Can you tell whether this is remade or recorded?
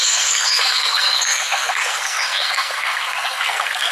remade